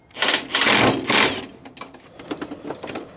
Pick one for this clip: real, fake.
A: real